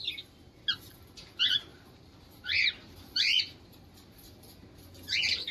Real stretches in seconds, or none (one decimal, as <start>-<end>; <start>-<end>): 0.0-1.7; 3.4-5.5